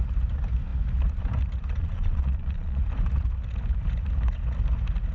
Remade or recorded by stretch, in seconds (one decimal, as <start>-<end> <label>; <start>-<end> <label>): 0.0-1.8 recorded; 1.8-2.8 remade; 2.8-5.1 recorded